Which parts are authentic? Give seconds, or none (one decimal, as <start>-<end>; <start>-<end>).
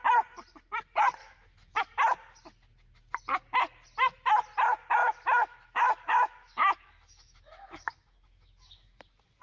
0.0-1.2; 1.8-5.0; 9.0-9.4